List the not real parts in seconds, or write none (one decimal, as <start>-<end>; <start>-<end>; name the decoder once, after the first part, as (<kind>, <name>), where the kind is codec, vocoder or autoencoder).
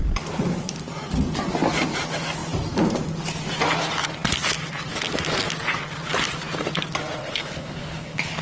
7.2-8.4 (codec, HILCodec)